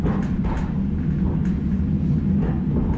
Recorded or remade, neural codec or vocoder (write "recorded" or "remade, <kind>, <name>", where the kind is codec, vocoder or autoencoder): recorded